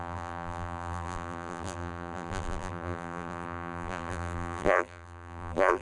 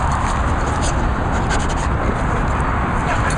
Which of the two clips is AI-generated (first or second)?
first